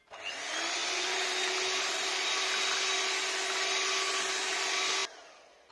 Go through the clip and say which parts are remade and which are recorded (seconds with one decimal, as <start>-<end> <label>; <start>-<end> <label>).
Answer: 0.0-0.8 recorded; 0.8-1.3 remade; 1.3-5.7 recorded